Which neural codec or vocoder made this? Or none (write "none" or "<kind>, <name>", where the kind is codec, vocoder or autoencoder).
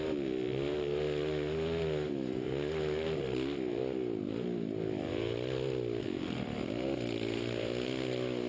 none